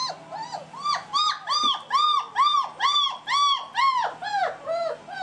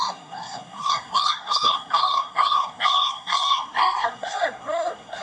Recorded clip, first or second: first